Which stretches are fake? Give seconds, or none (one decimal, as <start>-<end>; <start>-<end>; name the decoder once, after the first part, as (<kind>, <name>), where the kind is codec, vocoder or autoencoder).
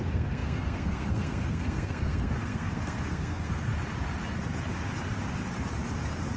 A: 0.0-3.7 (codec, SNAC)